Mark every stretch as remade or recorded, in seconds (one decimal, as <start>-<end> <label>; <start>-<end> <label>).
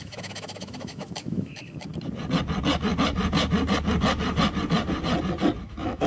0.0-1.9 remade; 1.9-5.6 recorded; 5.6-6.1 remade